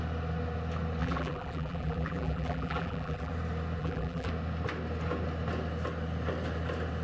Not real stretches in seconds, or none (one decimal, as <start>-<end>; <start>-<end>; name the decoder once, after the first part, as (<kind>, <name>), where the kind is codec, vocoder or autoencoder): 1.0-3.3 (vocoder, BigVGAN v2); 3.8-4.3